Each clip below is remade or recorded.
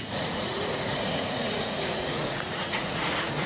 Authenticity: remade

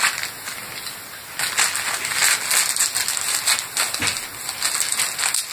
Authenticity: recorded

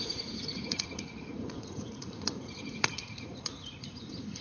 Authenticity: remade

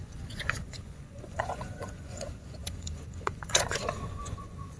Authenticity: remade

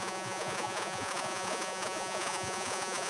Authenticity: remade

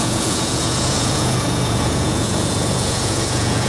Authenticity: remade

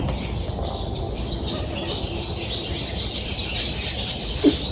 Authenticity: recorded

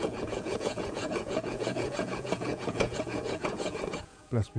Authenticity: remade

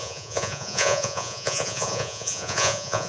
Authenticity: remade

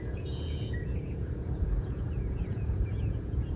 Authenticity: remade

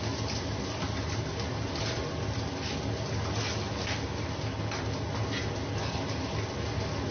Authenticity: recorded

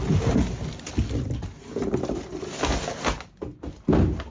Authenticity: recorded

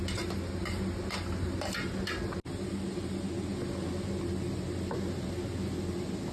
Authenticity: recorded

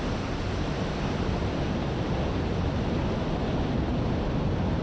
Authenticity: recorded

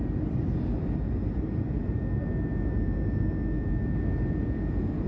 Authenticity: recorded